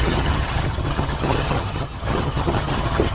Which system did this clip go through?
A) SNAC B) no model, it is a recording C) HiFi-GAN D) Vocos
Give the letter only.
C